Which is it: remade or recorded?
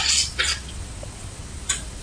remade